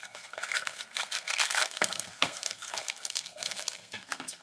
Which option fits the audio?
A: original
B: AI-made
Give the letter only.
B